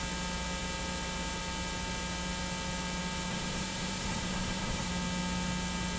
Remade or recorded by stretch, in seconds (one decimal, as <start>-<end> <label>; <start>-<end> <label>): 0.0-3.3 recorded; 3.3-4.9 remade; 4.9-6.0 recorded